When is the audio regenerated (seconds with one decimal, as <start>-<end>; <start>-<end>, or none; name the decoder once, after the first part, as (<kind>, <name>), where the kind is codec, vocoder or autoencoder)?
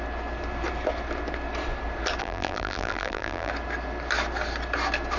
2.2-3.5 (vocoder, BigVGAN v2)